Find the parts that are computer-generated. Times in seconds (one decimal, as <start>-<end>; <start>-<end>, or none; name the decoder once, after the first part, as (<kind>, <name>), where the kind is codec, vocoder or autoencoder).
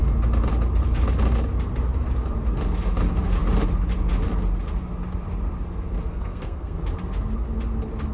6.1-6.8 (codec, SNAC)